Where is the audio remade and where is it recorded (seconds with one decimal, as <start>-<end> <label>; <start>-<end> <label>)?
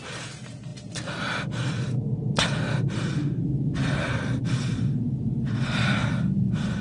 0.0-6.8 recorded